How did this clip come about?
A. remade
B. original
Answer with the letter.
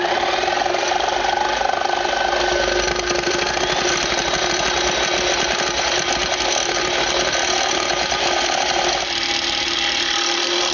B